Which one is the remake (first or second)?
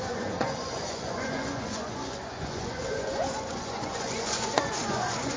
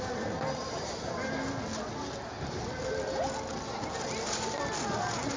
first